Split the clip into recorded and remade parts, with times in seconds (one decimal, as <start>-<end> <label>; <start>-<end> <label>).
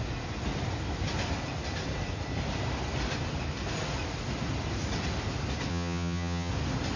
0.0-5.7 recorded; 5.7-6.5 remade; 6.5-7.0 recorded